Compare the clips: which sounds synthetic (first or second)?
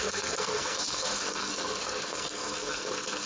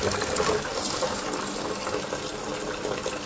first